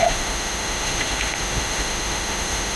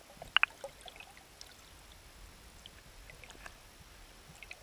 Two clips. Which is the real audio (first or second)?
second